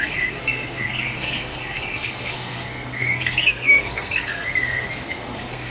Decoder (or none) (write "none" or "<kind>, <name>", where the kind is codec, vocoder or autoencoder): codec, SNAC